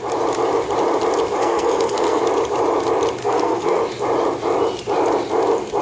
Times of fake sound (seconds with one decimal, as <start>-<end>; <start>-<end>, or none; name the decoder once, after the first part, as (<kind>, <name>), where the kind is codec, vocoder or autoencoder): 1.4-2.2 (codec, SNAC); 3.2-3.8